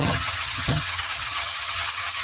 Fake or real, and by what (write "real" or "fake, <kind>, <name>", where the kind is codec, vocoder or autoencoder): fake, vocoder, HiFi-GAN